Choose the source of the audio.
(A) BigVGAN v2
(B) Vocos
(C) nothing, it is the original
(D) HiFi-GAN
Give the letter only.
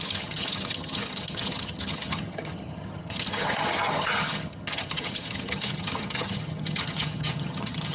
D